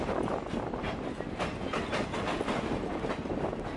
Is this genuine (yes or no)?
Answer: yes